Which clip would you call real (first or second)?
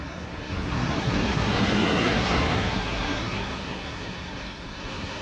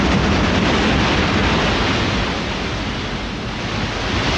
second